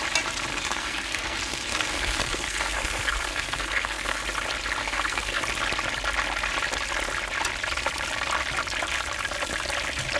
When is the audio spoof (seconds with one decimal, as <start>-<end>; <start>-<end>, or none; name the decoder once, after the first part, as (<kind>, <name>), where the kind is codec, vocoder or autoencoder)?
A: 0.5-4.2 (codec, SNAC); 4.8-5.4